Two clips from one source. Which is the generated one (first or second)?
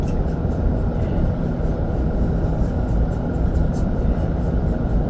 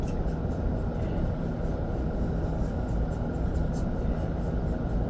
first